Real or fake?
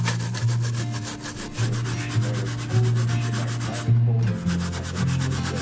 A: real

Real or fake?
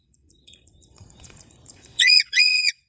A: fake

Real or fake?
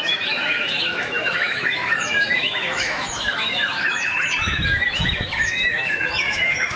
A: fake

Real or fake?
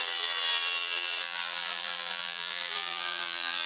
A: fake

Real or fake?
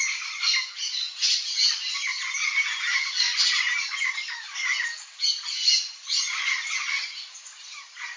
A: real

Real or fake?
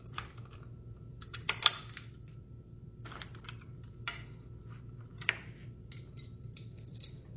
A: fake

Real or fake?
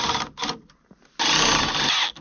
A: real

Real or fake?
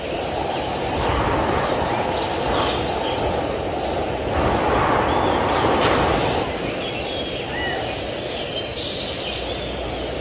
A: real